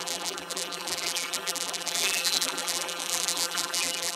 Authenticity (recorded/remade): remade